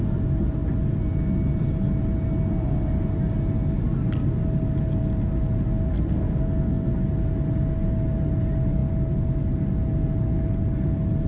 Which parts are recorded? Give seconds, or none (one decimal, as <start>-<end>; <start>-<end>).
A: 0.0-5.9; 6.9-11.3